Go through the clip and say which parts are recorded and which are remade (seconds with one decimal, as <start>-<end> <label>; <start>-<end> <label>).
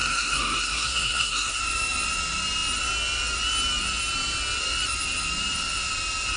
0.0-1.6 remade; 1.6-6.4 recorded